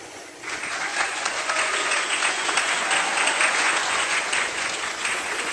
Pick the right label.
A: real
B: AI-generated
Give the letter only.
B